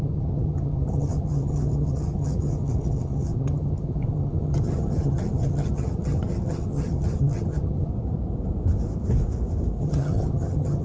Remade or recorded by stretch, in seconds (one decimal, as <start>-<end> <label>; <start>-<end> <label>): 0.0-7.9 remade; 7.9-9.8 recorded; 9.8-10.8 remade

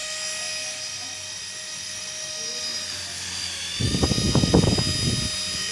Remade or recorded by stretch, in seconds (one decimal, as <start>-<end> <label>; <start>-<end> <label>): 0.0-5.7 recorded